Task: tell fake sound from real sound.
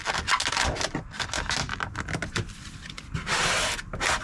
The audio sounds real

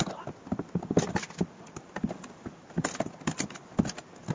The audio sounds real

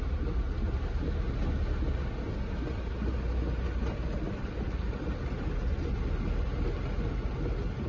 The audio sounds real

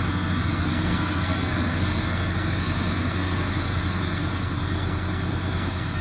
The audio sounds fake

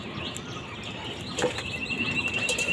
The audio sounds real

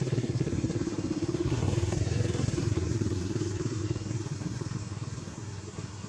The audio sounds fake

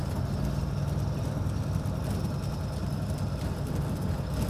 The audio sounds real